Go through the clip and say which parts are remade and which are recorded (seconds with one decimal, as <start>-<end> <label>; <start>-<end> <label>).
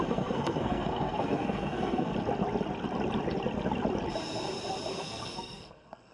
0.0-2.1 remade; 2.1-4.9 recorded; 4.9-6.1 remade